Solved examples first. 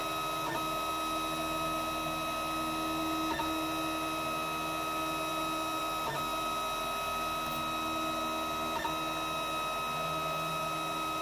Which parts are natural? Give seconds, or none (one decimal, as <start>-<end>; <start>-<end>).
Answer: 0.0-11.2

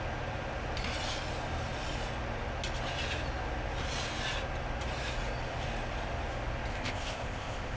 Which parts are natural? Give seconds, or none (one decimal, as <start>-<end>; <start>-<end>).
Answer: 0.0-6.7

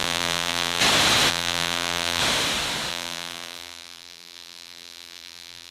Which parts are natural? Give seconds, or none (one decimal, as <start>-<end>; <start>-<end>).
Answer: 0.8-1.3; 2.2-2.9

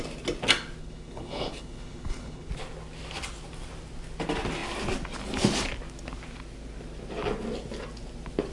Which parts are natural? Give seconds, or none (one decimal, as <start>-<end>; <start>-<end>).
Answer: 0.0-0.8; 2.5-8.5

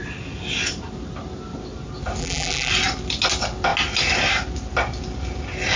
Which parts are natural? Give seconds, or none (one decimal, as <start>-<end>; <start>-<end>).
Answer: 0.0-2.2; 2.7-5.8